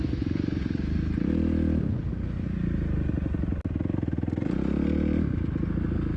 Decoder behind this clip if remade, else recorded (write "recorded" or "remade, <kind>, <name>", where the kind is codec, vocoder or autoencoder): recorded